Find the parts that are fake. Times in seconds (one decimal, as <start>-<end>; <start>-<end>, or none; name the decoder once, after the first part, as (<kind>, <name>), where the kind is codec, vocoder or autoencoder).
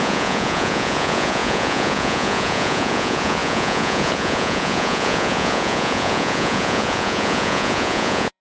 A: 0.0-8.4 (vocoder, Vocos)